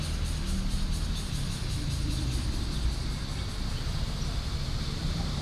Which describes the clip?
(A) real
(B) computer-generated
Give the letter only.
A